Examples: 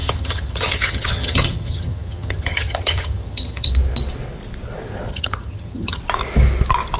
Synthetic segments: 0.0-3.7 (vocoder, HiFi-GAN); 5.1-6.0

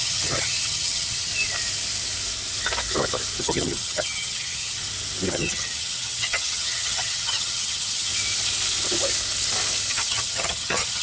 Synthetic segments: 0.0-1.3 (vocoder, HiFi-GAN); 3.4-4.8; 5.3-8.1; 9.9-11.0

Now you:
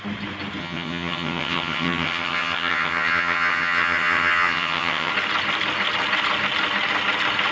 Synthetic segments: 0.6-5.1 (vocoder, HiFi-GAN)

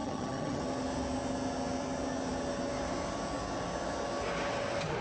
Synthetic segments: 0.0-0.6 (vocoder, HiFi-GAN)

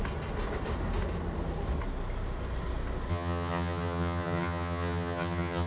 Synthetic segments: 3.1-5.7 (vocoder, HiFi-GAN)

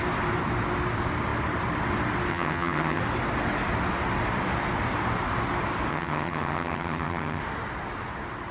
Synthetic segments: 2.3-3.0 (vocoder, HiFi-GAN); 5.9-7.4